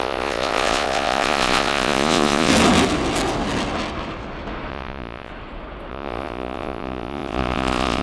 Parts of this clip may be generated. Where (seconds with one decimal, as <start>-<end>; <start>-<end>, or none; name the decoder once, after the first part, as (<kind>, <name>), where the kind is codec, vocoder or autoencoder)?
0.0-2.5 (vocoder, Vocos); 4.7-5.3; 5.9-8.0

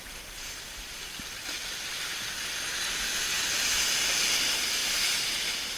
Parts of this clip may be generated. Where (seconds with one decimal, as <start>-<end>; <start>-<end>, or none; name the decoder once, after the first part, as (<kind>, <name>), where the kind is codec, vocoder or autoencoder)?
none

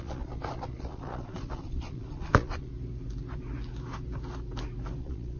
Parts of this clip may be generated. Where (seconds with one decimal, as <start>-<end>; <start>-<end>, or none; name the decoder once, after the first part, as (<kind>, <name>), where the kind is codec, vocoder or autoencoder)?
0.0-2.7 (vocoder, Vocos); 5.0-5.4

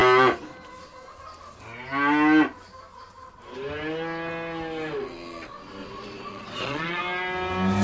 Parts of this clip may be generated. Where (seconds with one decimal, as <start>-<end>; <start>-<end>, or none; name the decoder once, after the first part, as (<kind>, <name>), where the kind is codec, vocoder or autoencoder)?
5.8-7.0 (vocoder, Vocos)

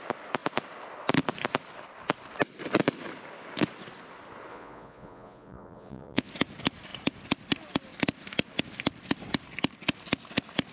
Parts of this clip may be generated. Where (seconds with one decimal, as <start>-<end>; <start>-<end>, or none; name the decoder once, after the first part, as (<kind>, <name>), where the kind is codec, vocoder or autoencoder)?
4.5-6.3 (vocoder, Vocos)

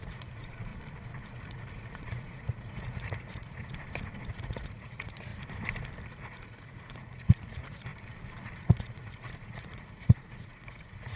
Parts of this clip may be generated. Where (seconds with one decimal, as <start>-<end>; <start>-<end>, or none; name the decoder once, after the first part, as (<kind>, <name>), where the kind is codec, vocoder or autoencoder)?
0.0-0.7 (vocoder, Vocos); 1.3-3.6; 4.3-5.3; 6.2-7.9; 8.5-11.2

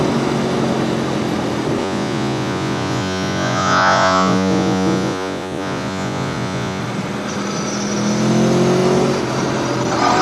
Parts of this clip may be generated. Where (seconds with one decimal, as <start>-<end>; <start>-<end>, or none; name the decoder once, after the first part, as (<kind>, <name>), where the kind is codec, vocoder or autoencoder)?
1.8-6.8 (vocoder, Vocos)

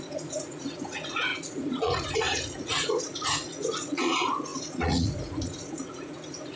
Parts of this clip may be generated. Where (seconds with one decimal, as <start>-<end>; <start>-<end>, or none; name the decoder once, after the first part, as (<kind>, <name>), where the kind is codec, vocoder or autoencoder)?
0.0-6.6 (vocoder, Vocos)